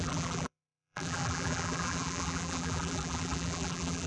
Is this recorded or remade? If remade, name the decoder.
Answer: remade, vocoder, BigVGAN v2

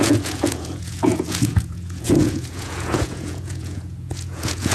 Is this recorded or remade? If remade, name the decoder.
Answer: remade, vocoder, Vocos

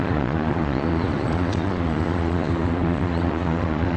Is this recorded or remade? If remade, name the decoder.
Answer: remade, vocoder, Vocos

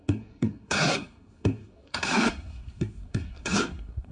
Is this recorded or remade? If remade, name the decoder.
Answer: remade, codec, SNAC